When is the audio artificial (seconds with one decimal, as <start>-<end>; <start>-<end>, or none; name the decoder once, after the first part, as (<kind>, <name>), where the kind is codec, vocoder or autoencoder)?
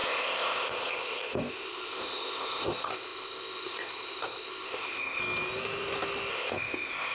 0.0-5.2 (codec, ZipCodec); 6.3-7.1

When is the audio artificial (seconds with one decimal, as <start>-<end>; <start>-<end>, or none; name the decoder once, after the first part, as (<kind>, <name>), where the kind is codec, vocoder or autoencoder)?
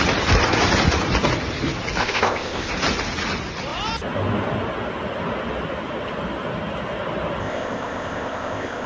2.0-2.7 (codec, ZipCodec); 7.4-8.9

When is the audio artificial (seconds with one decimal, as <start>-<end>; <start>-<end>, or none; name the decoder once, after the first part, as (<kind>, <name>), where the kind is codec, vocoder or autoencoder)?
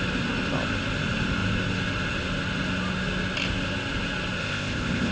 4.4-5.1 (codec, ZipCodec)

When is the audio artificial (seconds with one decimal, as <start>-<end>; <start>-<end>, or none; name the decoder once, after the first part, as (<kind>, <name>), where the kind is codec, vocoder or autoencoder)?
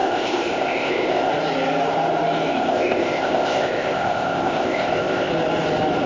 0.0-1.3 (codec, ZipCodec); 2.5-5.3